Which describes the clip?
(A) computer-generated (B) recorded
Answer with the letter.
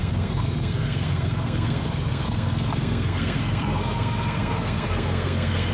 A